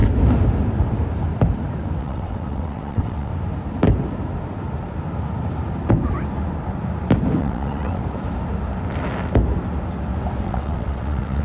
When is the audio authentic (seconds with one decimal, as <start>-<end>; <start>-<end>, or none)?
0.0-2.0; 3.3-7.4; 8.0-10.4